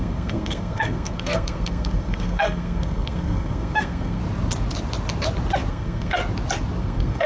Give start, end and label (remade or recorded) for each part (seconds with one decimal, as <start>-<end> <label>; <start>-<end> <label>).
0.0-4.2 remade; 4.2-5.7 recorded; 5.7-6.2 remade; 6.2-6.8 recorded; 6.8-7.3 remade